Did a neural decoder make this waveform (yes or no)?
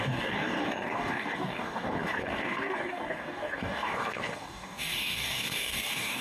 yes